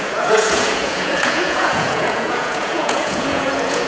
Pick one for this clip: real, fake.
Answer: fake